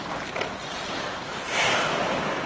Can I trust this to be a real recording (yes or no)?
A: yes